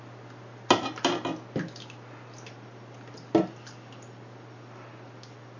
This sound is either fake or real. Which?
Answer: real